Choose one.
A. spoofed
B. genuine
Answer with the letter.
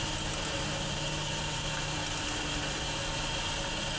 B